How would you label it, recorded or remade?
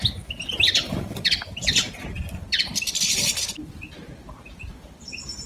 recorded